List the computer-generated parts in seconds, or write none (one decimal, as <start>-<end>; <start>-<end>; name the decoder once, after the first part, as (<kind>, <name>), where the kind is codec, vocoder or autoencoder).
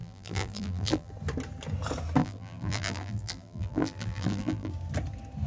0.0-1.1 (vocoder, BigVGAN v2); 2.2-4.7